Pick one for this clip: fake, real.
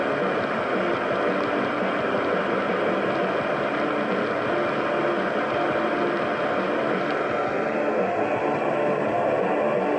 real